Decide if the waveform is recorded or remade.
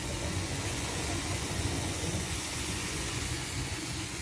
remade